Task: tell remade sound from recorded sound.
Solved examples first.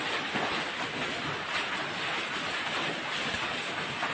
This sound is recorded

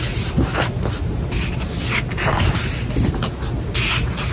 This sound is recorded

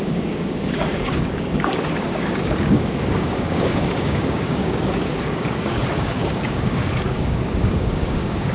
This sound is remade